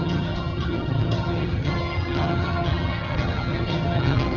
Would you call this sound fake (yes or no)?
yes